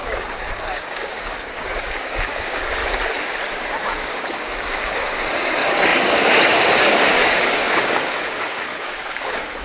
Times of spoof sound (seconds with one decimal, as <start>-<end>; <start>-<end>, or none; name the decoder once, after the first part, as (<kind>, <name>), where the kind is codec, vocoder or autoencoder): 0.0-2.8 (codec, DAC); 3.5-9.6